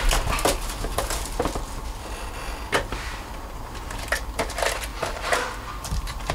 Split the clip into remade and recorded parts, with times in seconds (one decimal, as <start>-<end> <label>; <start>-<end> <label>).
0.0-4.9 recorded; 4.9-6.3 remade